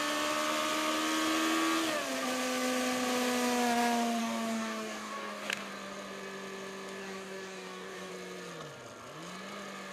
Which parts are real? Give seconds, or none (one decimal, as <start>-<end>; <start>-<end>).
0.0-4.2; 5.7-7.0; 8.1-9.9